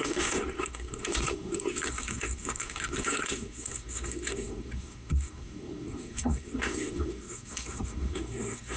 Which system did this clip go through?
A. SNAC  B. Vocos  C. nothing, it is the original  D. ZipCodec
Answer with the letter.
A